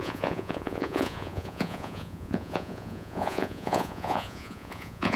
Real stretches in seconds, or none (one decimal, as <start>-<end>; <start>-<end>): none